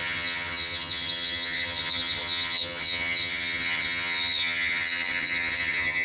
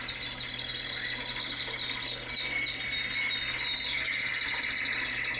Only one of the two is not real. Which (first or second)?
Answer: first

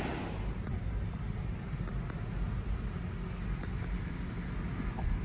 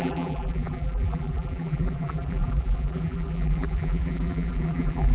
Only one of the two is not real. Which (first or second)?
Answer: second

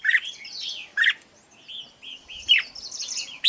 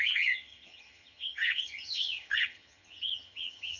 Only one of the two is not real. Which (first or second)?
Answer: second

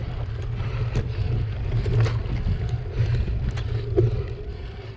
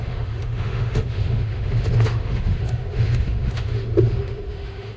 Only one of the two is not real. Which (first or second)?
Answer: second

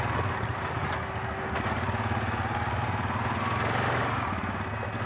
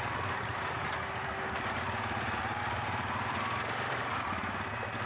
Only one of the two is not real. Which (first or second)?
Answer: second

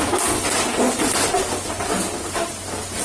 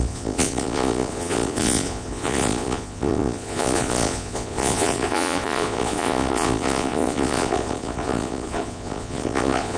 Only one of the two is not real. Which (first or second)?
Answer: second